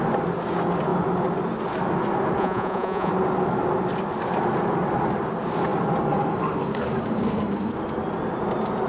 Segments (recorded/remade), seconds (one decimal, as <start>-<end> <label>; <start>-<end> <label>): 0.0-2.4 recorded; 2.4-3.1 remade; 3.1-8.9 recorded